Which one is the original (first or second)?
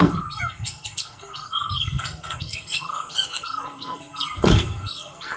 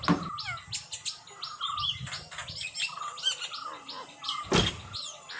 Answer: second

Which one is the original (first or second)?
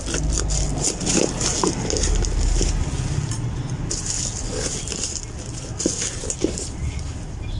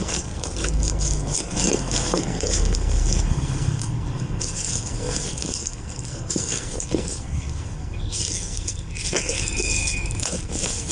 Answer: first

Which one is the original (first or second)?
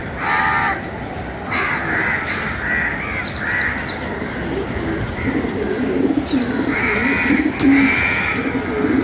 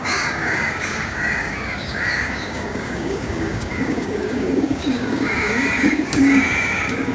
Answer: first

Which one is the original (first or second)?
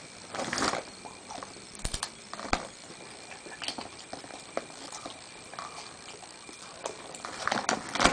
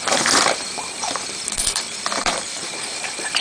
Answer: first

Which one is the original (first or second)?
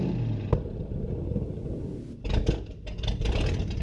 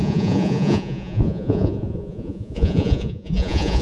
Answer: first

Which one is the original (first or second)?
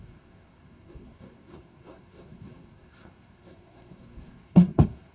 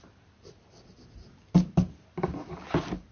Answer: second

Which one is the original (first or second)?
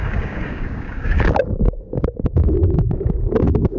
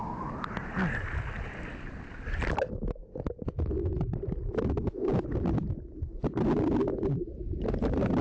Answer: second